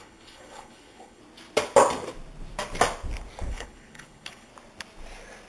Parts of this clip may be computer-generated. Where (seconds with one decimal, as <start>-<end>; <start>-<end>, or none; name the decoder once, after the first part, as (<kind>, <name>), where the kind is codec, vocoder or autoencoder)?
0.0-1.2 (codec, HILCodec); 3.5-4.5